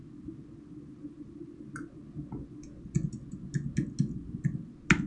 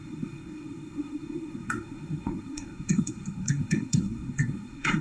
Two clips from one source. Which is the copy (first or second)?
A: second